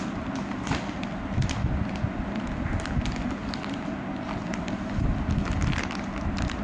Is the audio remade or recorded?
recorded